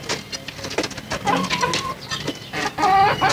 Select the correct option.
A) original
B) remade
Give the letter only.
A